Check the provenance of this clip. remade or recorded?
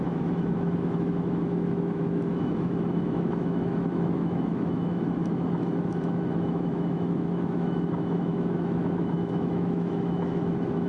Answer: remade